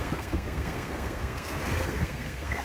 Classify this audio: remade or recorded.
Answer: remade